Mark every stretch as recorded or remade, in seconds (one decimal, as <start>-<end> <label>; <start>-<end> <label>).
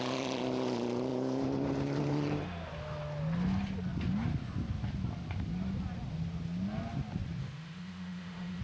0.0-7.4 recorded; 7.4-8.6 remade